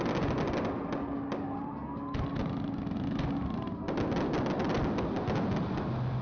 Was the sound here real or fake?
real